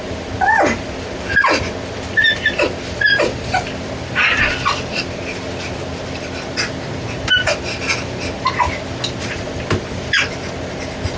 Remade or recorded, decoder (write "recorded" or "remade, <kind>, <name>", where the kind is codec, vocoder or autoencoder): recorded